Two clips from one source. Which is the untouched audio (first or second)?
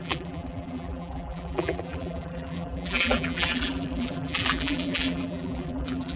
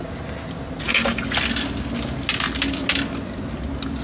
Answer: second